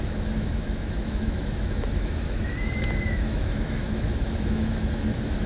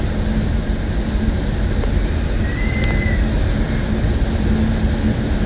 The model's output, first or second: first